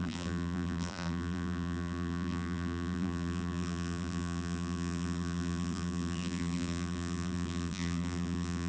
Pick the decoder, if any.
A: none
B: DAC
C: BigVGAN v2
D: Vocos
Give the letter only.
C